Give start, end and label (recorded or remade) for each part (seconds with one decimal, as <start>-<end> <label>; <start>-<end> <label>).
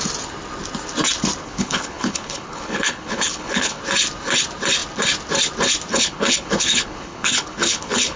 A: 0.0-1.4 recorded; 1.4-3.8 remade; 3.8-5.9 recorded; 5.9-8.2 remade